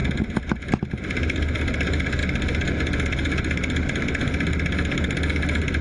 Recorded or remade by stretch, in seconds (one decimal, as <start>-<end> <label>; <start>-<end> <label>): 0.0-0.7 recorded; 0.7-2.2 remade; 2.2-5.8 recorded